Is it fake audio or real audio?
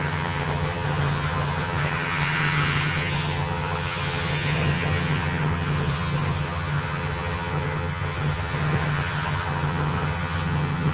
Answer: fake